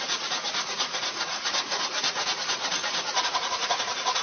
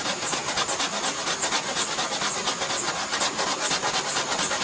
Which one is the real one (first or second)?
second